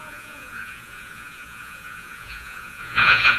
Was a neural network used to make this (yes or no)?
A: yes